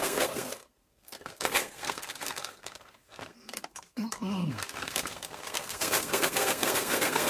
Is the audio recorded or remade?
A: remade